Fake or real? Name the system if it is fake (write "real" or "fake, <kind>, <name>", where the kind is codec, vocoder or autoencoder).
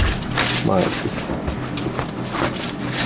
real